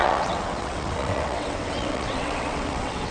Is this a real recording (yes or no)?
no